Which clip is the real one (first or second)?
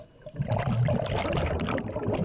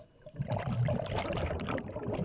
first